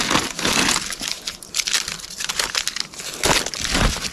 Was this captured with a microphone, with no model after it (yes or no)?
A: yes